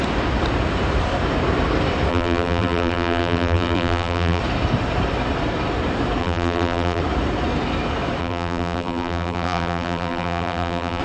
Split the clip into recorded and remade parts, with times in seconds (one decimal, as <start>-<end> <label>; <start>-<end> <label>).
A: 0.0-2.1 recorded; 2.1-4.4 remade; 4.4-6.2 recorded; 6.2-7.0 remade; 7.0-8.2 recorded; 8.2-11.0 remade